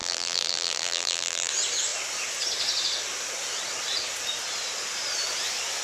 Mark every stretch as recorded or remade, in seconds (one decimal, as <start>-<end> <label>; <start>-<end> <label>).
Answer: 0.0-1.5 remade; 1.5-5.8 recorded